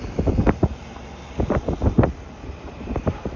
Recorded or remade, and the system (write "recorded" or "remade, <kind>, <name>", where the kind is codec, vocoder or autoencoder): recorded